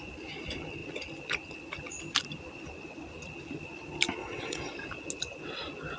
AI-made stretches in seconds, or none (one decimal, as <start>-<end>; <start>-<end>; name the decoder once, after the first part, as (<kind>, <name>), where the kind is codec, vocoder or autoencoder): 4.2-4.7 (vocoder, WaveNeXt)